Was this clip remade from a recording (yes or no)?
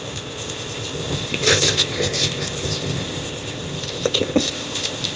yes